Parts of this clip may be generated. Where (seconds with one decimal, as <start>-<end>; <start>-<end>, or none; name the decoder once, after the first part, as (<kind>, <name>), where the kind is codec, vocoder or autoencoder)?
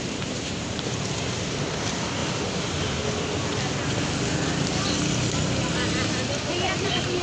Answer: 0.0-2.2 (vocoder, BigVGAN v2); 6.5-7.2